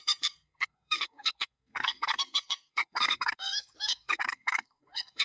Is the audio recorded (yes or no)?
no